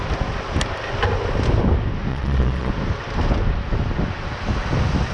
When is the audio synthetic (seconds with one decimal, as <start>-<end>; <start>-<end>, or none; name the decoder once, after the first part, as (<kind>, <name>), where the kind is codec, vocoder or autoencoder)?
2.1-2.7 (vocoder, Vocos)